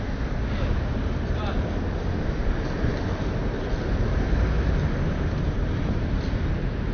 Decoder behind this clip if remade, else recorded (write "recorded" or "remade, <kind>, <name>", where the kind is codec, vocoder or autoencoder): recorded